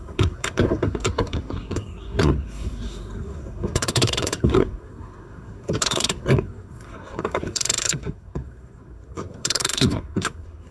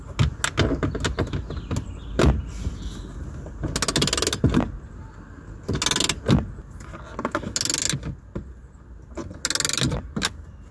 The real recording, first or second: second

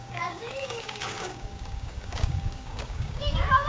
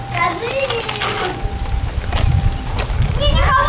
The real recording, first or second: second